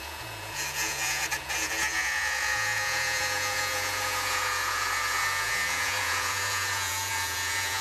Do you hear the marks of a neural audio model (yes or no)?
yes